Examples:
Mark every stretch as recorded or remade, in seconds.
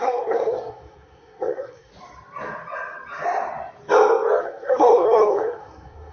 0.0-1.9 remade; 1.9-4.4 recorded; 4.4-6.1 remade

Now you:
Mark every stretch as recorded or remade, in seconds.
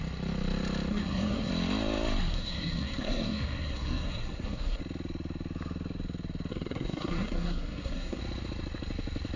0.0-0.9 recorded; 0.9-1.5 remade; 1.5-2.3 recorded; 2.3-4.8 remade; 4.8-6.5 recorded; 6.5-8.2 remade; 8.2-9.4 recorded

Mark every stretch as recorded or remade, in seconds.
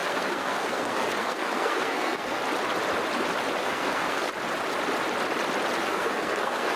0.0-2.4 remade; 2.4-3.6 recorded; 3.6-4.3 remade; 4.3-5.8 recorded; 5.8-6.8 remade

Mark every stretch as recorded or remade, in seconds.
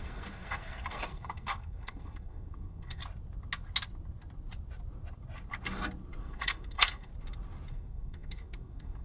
0.0-3.0 remade; 3.0-6.2 recorded; 6.2-7.1 remade; 7.1-7.7 recorded; 7.7-9.0 remade